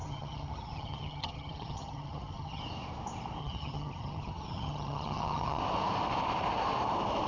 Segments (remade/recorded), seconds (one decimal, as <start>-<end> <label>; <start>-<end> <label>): 0.0-2.6 remade; 2.6-3.4 recorded; 3.4-5.6 remade; 5.6-7.3 recorded